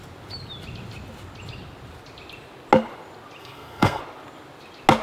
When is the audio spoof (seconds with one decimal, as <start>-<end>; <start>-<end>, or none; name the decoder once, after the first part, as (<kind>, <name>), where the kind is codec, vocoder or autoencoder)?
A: 3.4-4.0 (codec, SNAC)